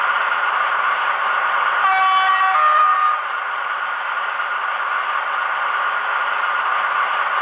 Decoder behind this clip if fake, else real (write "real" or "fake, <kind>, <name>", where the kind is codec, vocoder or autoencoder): real